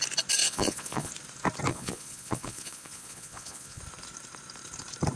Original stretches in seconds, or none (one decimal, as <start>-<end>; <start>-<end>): 0.0-0.4; 1.1-1.7; 3.8-5.2